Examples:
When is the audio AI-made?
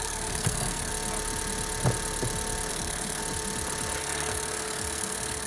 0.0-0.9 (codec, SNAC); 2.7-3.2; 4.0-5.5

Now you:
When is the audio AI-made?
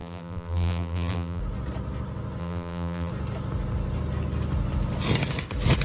0.0-1.4 (vocoder, BigVGAN v2); 2.4-3.1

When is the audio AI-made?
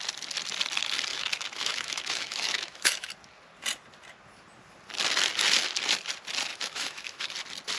1.1-3.1 (autoencoder, DAC-VAE); 6.5-7.3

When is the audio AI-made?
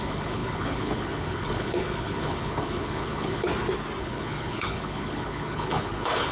0.0-3.5 (codec, HILCodec); 4.0-6.3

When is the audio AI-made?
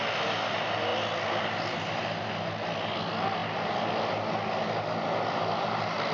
none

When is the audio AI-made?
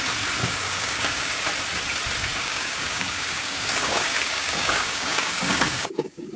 0.4-1.4 (codec, DAC); 2.3-6.4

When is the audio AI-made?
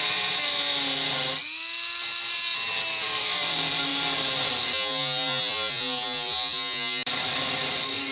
none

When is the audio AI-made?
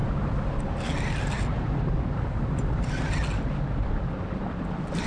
none